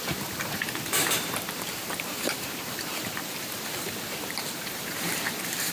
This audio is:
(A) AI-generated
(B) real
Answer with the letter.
A